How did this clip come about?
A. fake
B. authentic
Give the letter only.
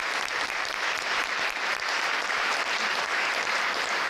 A